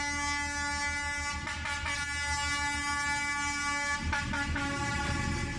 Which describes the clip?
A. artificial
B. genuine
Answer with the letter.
B